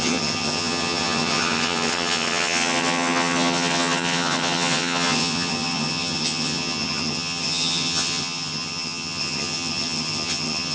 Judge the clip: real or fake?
fake